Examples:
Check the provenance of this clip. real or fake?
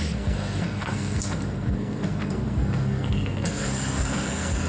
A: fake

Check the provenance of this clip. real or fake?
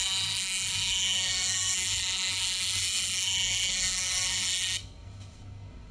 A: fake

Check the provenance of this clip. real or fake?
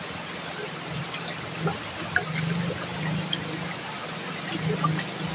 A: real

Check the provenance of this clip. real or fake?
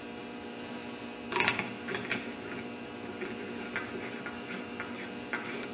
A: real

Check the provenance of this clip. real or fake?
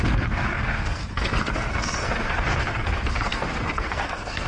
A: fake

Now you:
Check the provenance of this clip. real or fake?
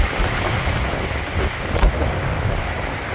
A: real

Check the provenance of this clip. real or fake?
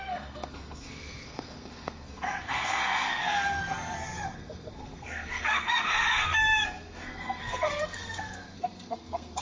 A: fake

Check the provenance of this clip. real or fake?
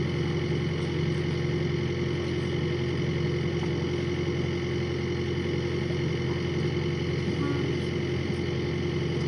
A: real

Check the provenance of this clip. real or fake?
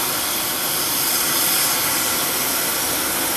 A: real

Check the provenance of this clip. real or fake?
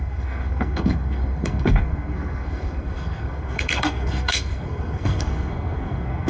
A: fake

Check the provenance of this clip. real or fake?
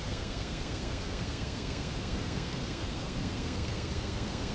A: fake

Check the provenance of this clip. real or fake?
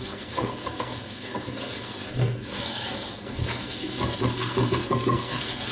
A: fake